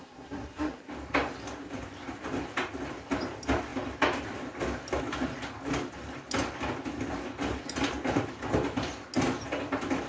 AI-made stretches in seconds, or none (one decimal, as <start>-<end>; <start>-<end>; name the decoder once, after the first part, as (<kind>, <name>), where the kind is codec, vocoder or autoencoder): 0.0-0.9 (codec, SNAC)